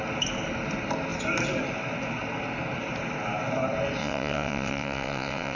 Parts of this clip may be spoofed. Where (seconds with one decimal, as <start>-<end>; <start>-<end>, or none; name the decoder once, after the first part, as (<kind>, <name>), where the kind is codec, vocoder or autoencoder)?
4.0-5.6 (vocoder, WaveNeXt)

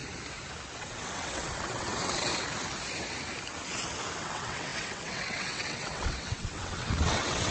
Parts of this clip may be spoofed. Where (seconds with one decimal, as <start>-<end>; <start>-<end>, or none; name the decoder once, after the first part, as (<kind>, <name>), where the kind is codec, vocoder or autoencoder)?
0.8-2.3 (vocoder, WaveNeXt); 4.2-7.5

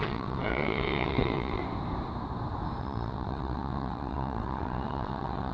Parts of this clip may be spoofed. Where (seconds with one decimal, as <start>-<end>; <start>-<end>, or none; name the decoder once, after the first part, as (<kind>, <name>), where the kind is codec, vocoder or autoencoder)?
0.0-1.6 (vocoder, WaveNeXt); 2.8-5.5

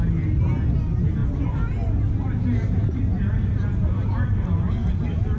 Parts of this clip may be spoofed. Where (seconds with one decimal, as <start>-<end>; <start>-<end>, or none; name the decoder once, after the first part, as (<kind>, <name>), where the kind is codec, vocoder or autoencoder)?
none

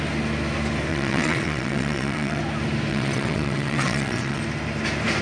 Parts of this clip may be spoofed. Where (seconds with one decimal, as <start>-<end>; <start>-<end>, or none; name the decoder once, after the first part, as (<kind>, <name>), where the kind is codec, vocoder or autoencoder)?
0.9-2.4 (vocoder, WaveNeXt); 2.9-4.4

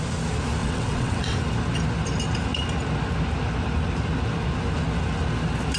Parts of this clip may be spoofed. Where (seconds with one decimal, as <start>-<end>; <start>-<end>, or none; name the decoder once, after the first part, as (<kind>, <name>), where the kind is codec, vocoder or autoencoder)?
0.6-1.4 (vocoder, WaveNeXt)